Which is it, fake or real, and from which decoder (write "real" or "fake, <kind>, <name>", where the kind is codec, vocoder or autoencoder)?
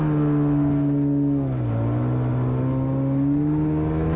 real